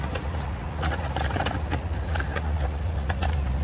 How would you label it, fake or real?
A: fake